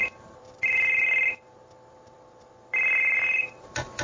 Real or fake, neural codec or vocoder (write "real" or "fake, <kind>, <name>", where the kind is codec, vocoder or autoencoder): fake, vocoder, BigVGAN v2